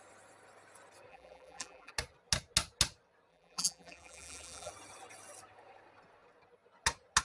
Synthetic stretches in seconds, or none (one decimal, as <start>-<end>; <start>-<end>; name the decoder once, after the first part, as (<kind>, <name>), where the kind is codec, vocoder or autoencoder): 1.1-1.9 (vocoder, BigVGAN v2); 3.3-4.7